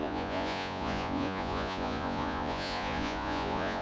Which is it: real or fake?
fake